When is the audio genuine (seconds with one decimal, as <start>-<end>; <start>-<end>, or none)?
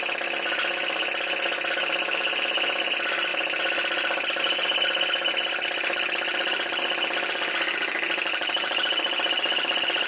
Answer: 0.0-10.1